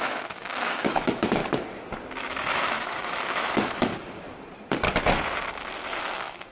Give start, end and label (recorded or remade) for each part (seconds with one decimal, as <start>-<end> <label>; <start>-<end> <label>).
0.0-1.4 remade; 1.4-2.2 recorded; 2.2-3.9 remade; 3.9-6.0 recorded; 6.0-6.5 remade